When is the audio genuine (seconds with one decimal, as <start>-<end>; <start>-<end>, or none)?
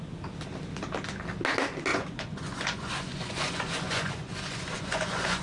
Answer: 0.0-1.9